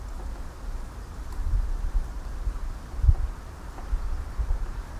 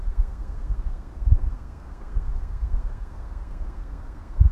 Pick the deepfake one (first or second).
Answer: second